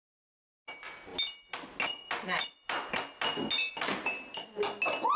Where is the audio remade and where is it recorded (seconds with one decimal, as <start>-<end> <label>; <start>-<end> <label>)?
0.0-5.2 recorded